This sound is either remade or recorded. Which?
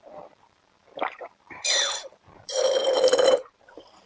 remade